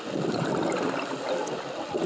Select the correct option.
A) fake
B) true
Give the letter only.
B